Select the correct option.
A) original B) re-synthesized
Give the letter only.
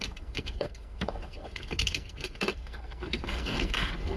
B